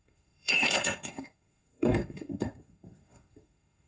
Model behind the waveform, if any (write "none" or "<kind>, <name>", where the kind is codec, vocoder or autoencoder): codec, SNAC